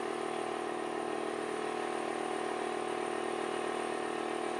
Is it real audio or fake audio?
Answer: real